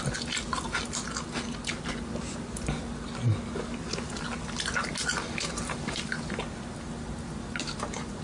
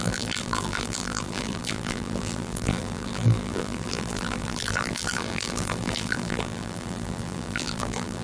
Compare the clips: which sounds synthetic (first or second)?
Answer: second